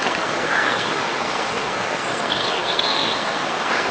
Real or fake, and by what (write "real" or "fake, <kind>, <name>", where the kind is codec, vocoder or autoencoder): fake, codec, SNAC